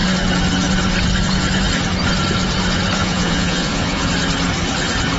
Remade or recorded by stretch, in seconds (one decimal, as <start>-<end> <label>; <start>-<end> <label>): 0.0-3.0 recorded; 3.0-4.1 remade; 4.1-5.2 recorded